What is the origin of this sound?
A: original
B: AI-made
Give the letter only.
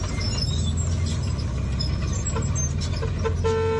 A